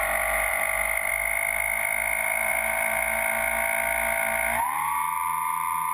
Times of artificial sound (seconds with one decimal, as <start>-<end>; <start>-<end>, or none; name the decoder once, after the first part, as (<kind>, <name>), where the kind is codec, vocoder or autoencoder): none